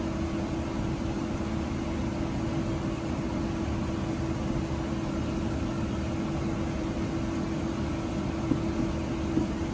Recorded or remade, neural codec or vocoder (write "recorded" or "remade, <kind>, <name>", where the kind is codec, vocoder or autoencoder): recorded